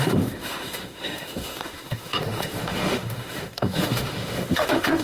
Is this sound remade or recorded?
remade